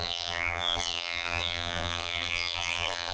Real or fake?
fake